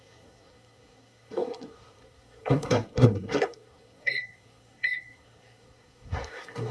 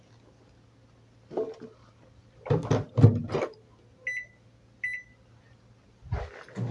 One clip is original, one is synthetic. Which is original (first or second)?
second